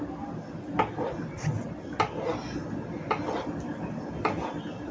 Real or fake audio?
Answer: real